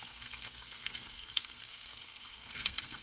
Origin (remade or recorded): remade